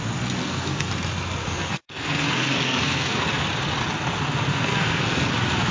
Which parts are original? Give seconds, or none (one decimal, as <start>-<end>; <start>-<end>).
0.0-0.4; 0.9-1.4; 3.2-4.5; 5.3-5.7